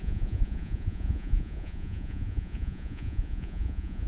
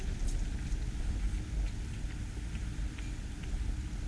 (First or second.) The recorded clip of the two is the second